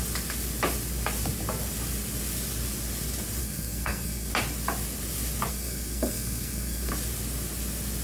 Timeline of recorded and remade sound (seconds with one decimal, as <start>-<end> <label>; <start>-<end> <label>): 0.0-3.4 recorded; 3.4-4.3 remade; 4.3-5.5 recorded; 5.5-6.9 remade; 6.9-8.0 recorded